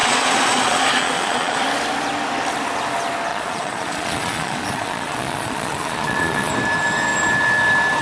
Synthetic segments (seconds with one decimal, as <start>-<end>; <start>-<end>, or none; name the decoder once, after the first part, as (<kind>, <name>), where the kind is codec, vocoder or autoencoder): 0.0-1.6 (vocoder, Vocos); 3.3-6.5